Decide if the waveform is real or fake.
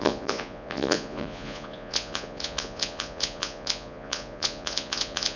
fake